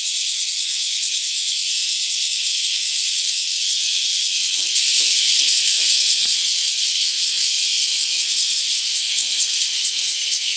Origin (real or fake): fake